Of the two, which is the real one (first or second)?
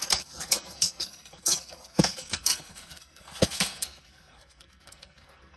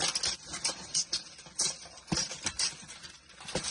second